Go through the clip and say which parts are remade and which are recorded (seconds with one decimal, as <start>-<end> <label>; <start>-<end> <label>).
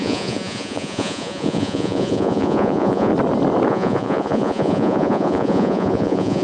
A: 0.0-3.1 remade; 3.1-3.7 recorded; 3.7-6.4 remade